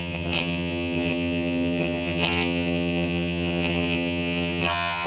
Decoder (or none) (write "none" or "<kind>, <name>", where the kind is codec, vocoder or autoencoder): vocoder, HiFi-GAN